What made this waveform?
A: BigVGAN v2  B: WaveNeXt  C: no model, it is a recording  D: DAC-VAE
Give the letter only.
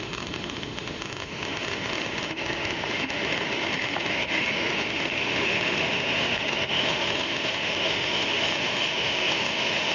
D